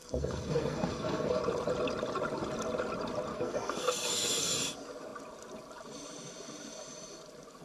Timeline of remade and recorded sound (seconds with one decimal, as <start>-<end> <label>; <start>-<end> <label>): 0.0-1.4 remade; 1.4-3.3 recorded; 3.3-4.5 remade; 4.5-7.6 recorded